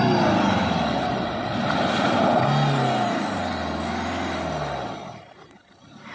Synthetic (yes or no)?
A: no